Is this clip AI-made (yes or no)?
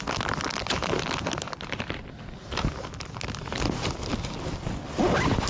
no